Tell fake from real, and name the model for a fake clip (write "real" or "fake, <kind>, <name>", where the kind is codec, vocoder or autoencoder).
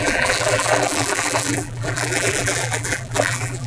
fake, vocoder, BigVGAN v2